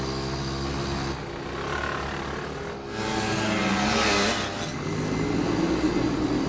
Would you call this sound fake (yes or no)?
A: no